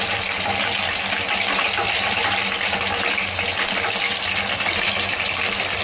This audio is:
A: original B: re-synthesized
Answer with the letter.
B